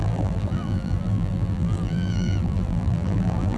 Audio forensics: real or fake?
fake